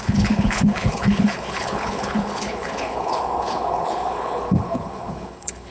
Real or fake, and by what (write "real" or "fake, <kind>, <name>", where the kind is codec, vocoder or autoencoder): fake, codec, HILCodec